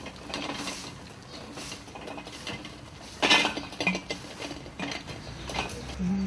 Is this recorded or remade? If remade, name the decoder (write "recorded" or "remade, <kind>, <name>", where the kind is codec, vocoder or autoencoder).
recorded